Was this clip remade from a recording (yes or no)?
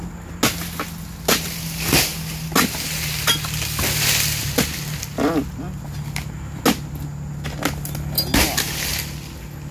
no